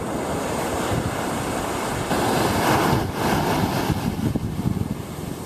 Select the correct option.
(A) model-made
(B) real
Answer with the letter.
B